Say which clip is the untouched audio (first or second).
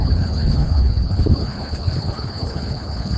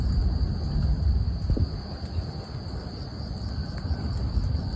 second